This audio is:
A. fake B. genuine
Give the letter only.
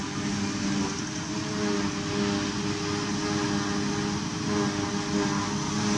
B